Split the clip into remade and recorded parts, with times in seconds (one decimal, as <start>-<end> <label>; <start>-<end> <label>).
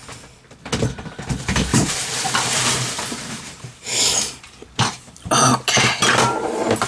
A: 0.0-1.7 recorded; 1.7-5.8 remade; 5.8-6.9 recorded